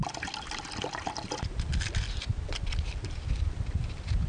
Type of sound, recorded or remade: recorded